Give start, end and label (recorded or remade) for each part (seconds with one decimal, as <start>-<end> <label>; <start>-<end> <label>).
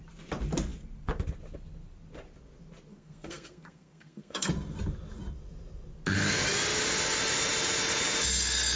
0.0-2.9 recorded; 2.9-4.5 remade; 4.5-8.8 recorded